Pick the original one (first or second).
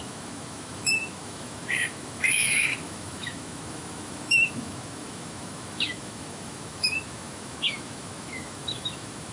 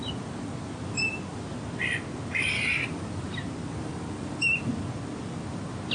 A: second